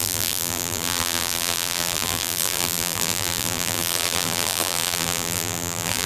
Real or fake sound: fake